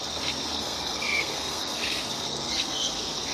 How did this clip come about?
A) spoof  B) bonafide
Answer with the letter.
A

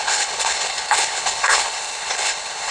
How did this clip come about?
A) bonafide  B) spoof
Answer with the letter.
B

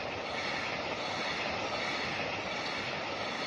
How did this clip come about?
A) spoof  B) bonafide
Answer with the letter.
B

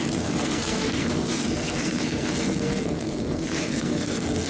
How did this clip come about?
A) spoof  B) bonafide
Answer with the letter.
A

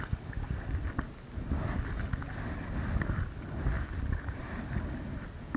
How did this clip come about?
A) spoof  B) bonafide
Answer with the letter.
B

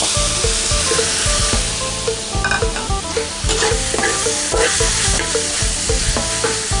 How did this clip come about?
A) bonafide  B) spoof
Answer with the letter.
A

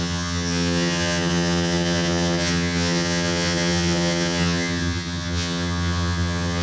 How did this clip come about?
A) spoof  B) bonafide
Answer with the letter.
A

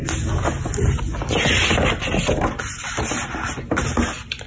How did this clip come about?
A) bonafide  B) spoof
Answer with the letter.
A